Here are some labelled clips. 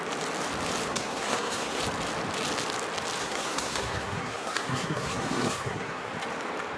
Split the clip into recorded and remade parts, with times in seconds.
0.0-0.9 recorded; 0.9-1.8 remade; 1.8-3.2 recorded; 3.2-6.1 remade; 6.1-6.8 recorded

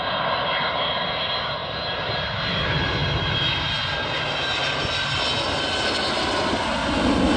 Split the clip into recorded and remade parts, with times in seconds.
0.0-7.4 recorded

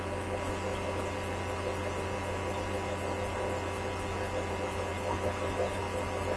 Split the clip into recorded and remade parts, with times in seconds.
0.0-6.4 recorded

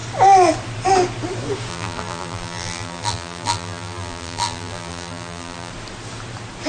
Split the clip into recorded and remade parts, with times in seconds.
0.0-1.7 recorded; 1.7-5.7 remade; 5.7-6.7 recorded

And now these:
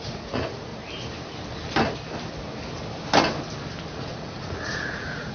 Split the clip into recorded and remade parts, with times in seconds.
0.0-0.7 remade; 0.7-3.9 recorded; 3.9-5.3 remade

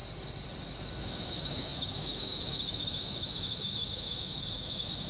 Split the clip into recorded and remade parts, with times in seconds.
0.0-1.0 recorded; 1.0-5.1 remade

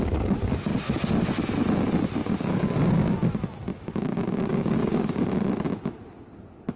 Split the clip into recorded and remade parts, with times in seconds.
0.0-2.2 recorded; 2.2-3.1 remade; 3.1-3.7 recorded; 3.7-5.3 remade; 5.3-6.8 recorded

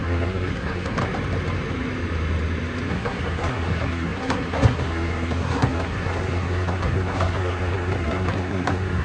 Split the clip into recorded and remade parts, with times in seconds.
0.0-1.0 remade; 1.0-2.9 recorded; 2.9-9.0 remade